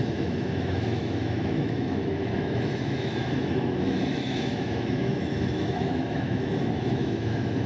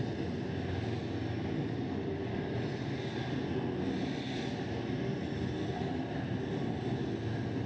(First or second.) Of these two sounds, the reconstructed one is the first